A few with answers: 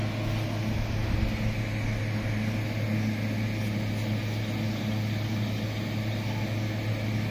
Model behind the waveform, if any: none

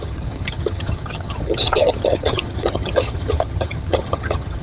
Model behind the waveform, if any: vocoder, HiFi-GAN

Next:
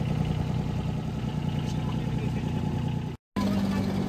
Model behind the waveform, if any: none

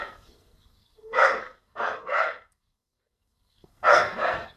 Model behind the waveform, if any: codec, SNAC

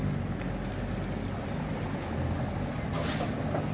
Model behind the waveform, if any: none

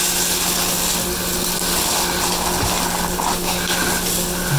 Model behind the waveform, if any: none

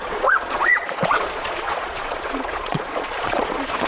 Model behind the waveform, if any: vocoder, Vocos